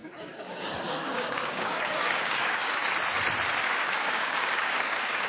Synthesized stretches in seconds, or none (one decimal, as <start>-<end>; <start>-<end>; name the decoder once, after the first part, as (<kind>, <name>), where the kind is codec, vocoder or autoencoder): 0.0-2.8 (codec, DAC); 3.6-5.3